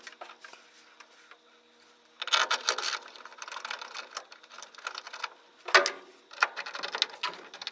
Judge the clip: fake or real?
real